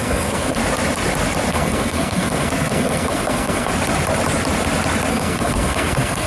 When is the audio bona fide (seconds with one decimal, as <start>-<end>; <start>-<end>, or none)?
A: 0.6-1.5; 3.7-5.1